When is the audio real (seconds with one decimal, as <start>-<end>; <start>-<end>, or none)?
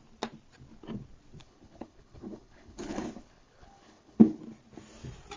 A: 0.0-1.4; 4.4-5.4